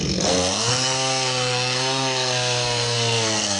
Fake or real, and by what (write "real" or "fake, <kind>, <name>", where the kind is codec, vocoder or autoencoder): fake, codec, SNAC